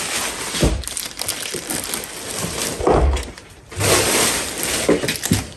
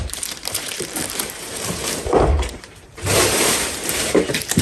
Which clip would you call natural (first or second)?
first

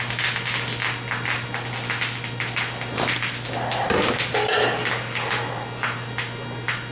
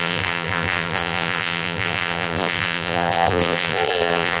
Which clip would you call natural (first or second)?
first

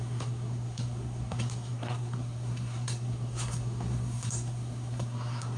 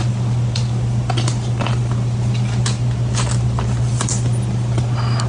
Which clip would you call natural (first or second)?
second